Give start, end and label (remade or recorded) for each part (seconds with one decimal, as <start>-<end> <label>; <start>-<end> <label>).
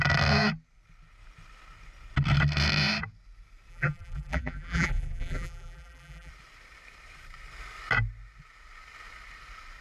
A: 0.0-3.7 recorded; 3.7-6.3 remade; 6.3-9.8 recorded